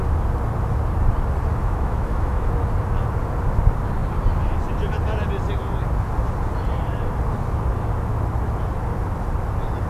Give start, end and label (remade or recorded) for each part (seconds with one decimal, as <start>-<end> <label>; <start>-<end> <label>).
0.0-1.6 recorded; 1.6-2.5 remade; 2.5-9.9 recorded